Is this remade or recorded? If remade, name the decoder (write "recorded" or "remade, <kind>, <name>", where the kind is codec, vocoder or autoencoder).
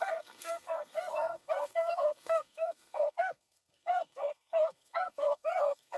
remade, codec, SNAC